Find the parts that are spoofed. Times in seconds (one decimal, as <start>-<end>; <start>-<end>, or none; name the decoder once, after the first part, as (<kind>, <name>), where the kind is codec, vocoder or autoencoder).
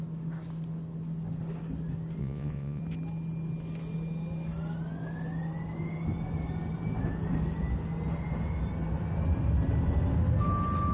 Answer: 2.2-2.8 (vocoder, Vocos)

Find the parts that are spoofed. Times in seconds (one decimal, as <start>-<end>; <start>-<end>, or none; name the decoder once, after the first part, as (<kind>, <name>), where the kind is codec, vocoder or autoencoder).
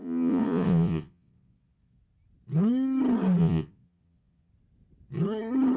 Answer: 0.0-2.0 (vocoder, Vocos); 3.4-4.5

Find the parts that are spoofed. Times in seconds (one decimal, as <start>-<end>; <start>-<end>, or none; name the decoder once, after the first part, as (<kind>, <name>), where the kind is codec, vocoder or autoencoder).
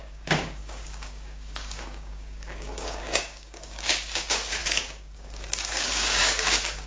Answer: 0.0-6.9 (codec, DAC)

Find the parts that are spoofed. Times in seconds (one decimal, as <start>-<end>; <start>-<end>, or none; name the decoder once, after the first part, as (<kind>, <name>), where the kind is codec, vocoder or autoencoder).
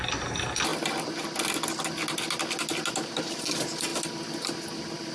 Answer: none